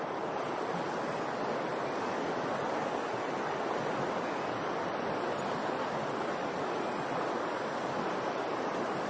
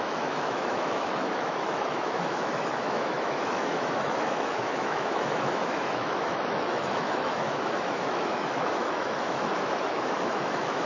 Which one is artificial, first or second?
second